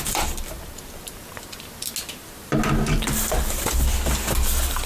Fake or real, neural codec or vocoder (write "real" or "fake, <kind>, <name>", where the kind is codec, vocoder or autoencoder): real